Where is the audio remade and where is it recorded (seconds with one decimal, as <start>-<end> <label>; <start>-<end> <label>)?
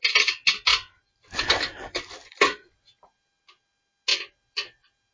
0.0-2.2 recorded; 2.2-3.4 remade; 3.4-4.1 recorded; 4.1-5.1 remade